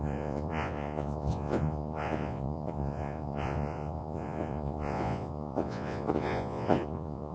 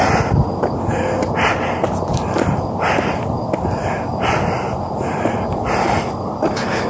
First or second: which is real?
second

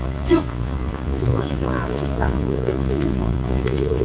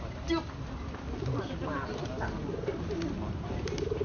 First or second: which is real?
second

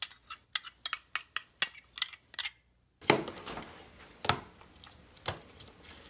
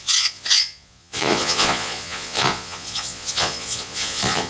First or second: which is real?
first